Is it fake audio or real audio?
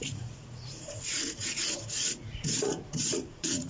fake